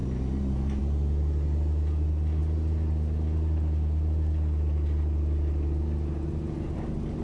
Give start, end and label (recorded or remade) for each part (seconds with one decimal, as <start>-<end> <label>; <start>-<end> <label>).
0.0-0.8 remade; 0.8-7.2 recorded